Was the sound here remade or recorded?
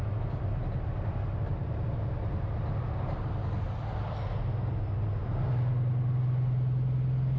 recorded